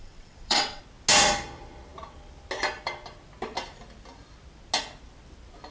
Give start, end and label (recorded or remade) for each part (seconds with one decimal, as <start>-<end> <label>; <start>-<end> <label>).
0.0-0.8 remade; 0.8-5.7 recorded